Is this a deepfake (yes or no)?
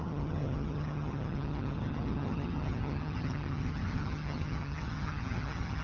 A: yes